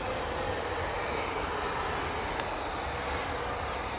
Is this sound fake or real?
real